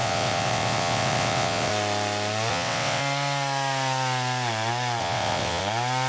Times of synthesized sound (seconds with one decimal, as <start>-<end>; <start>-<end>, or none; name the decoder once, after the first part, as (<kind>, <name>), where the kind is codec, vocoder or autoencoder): 0.0-1.7 (vocoder, WaveNeXt); 2.5-3.0; 5.0-5.6